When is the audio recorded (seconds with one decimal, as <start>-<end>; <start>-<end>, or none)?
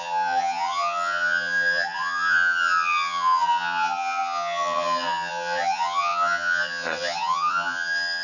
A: none